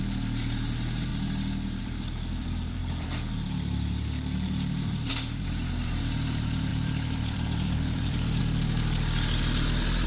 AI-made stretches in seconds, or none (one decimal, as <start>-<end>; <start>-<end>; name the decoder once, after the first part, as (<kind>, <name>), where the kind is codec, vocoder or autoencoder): 0.0-1.1 (vocoder, BigVGAN v2); 1.8-10.1